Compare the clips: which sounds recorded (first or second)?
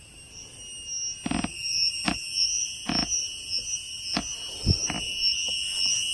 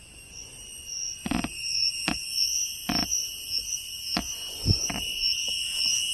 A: first